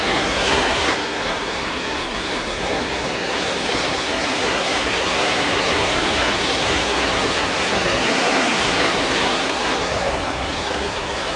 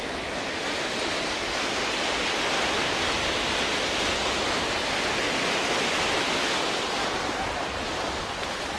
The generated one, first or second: first